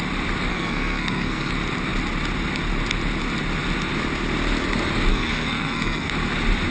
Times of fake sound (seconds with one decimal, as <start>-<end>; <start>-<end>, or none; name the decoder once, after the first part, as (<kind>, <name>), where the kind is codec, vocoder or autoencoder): 0.5-1.5 (codec, SNAC); 5.1-6.1